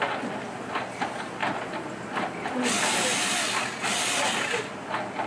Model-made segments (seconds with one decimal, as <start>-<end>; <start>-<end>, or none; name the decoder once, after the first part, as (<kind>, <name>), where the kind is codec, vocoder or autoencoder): none